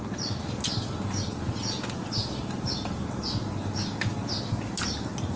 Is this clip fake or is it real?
real